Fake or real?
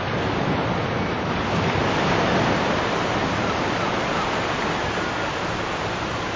real